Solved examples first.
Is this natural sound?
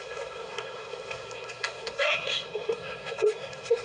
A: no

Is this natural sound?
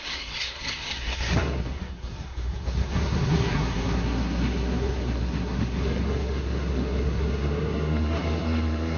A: no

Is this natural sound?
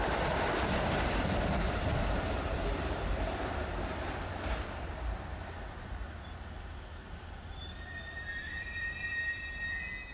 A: no